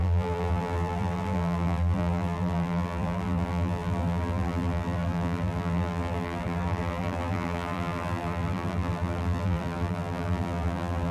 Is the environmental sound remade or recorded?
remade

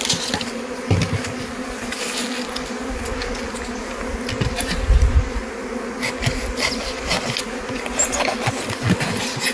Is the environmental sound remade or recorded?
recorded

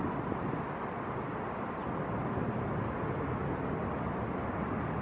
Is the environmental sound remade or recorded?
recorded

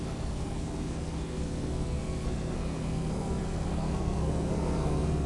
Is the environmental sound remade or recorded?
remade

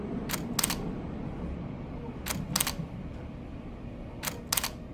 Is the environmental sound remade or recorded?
recorded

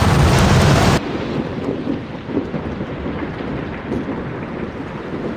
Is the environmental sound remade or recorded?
recorded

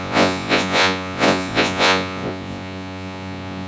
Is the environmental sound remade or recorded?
remade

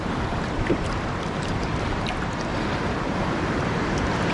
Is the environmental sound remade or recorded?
remade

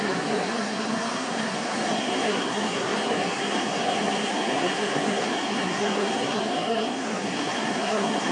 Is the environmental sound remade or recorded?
remade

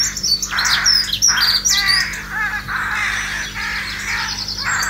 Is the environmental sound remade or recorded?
recorded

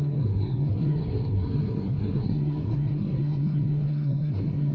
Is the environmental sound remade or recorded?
remade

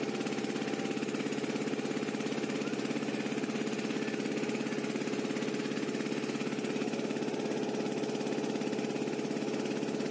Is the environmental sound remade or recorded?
recorded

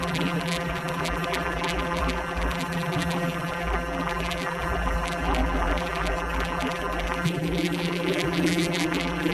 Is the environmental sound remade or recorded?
remade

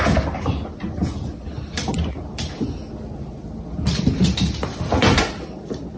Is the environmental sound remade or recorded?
recorded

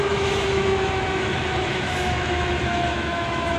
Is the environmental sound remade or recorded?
remade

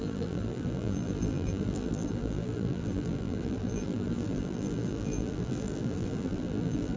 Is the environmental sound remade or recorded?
remade